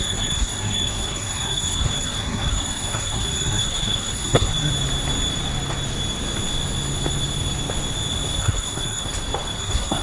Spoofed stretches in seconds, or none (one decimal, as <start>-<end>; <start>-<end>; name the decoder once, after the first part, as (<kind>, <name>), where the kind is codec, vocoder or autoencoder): 0.0-4.7 (codec, SNAC); 8.4-9.0; 9.6-10.0

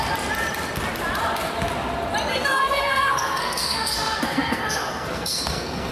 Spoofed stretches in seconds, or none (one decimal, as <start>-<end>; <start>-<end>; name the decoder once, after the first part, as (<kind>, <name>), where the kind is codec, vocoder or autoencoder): 2.3-5.9 (codec, SNAC)

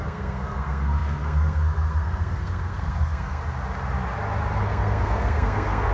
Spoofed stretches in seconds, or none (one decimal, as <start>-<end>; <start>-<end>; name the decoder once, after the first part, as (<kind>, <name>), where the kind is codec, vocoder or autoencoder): 0.0-3.4 (codec, SNAC); 4.6-5.9

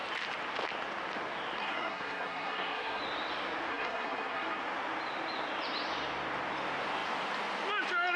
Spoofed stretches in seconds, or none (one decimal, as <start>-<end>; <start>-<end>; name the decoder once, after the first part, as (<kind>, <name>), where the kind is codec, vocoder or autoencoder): 1.6-3.0 (codec, SNAC); 3.7-4.6

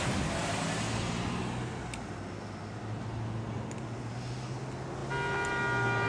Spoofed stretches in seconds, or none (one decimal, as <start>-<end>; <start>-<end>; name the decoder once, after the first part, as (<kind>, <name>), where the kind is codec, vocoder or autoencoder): none

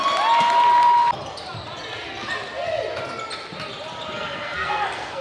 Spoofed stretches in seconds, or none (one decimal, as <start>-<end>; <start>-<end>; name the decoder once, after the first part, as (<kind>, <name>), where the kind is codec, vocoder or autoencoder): 4.2-5.2 (codec, SNAC)

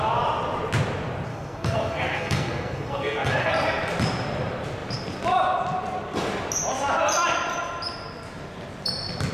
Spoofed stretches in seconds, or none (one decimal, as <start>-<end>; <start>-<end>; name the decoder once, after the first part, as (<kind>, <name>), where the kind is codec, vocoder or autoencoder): 1.3-3.5 (codec, SNAC)